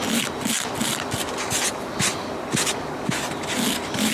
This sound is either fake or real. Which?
real